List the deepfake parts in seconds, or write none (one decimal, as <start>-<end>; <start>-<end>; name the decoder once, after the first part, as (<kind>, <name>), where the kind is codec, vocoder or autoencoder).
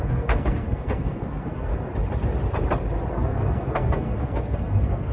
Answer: 0.0-1.7 (codec, SNAC); 3.1-5.1